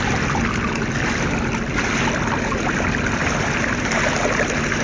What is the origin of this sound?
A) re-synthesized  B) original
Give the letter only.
B